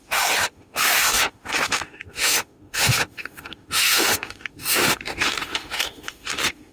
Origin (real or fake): fake